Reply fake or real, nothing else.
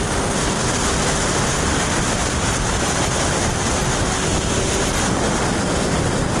real